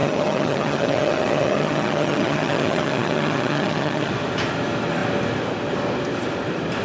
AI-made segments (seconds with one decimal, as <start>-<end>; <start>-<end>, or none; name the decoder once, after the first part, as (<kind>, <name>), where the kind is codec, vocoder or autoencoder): 0.0-4.1 (vocoder, HiFi-GAN)